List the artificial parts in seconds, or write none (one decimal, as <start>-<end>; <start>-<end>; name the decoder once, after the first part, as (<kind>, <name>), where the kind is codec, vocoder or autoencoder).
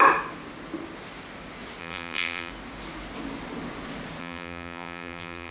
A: 1.8-2.5 (vocoder, BigVGAN v2); 4.2-5.5